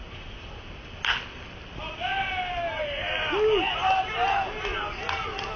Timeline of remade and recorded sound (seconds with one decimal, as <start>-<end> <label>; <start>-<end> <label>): 0.0-5.6 recorded